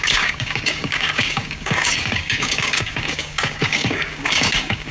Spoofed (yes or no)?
yes